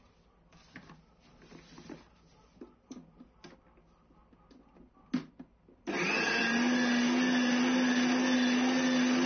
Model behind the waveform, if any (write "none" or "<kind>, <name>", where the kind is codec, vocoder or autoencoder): none